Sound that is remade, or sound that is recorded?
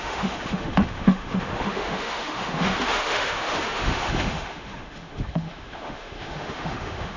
remade